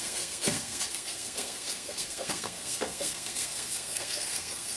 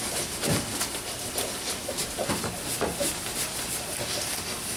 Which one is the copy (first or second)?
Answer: first